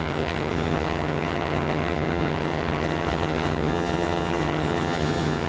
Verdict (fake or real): fake